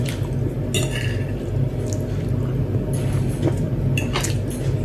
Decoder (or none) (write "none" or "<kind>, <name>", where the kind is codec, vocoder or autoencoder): none